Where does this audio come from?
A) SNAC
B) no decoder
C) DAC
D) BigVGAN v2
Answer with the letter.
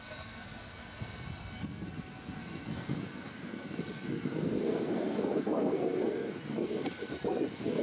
A